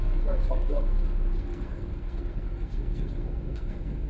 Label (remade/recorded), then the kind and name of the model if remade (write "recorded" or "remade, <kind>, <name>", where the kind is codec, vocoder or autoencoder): remade, codec, SNAC